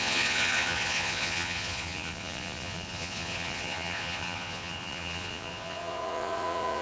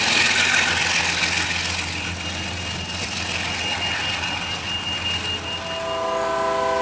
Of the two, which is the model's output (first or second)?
first